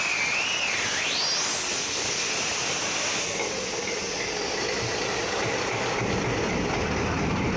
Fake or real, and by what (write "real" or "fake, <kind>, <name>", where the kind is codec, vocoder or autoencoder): real